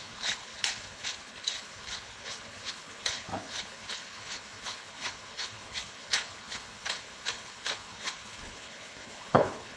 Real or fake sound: fake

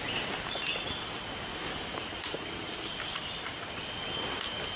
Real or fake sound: real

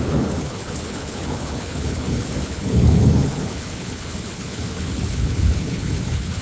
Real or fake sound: fake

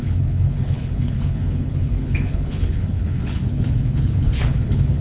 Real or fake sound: fake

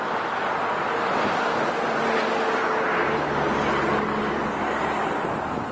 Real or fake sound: real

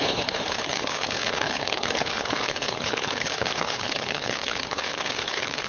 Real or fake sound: fake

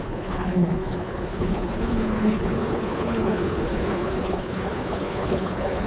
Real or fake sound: fake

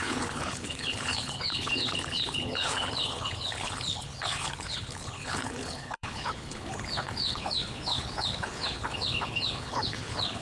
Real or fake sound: fake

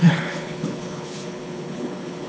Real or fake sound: fake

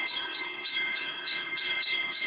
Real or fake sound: fake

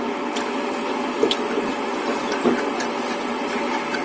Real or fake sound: real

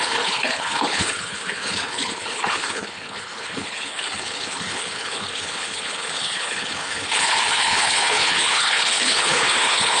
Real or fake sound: fake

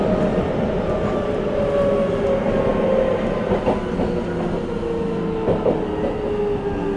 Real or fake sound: real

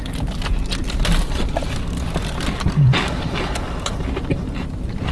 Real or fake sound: real